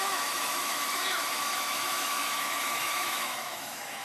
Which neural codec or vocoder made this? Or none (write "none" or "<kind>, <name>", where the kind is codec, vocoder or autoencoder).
autoencoder, DAC-VAE